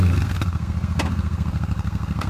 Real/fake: fake